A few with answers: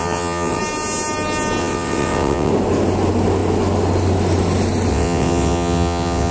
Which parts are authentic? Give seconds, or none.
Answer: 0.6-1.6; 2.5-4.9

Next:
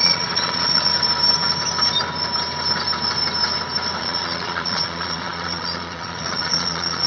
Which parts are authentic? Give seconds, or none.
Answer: 0.9-4.0

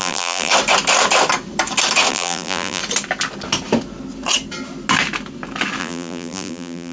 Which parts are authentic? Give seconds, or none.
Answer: 0.5-2.1; 2.8-5.8

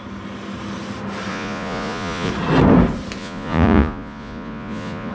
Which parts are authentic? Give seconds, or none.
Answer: 0.0-1.3; 2.3-3.2

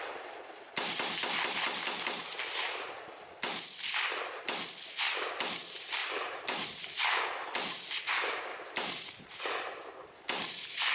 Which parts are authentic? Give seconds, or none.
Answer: 0.0-6.0; 7.2-8.5; 9.8-10.9

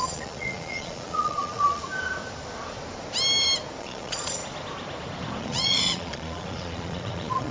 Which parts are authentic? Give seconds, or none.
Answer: 1.8-3.8; 4.4-5.4

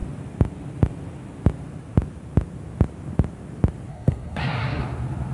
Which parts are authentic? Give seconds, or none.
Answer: 0.0-3.9; 4.8-5.3

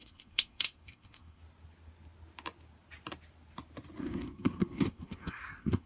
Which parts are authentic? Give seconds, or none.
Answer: 1.4-4.0